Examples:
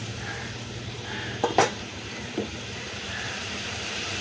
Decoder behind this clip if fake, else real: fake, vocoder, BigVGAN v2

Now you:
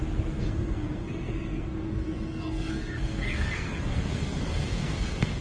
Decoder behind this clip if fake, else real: fake, codec, SNAC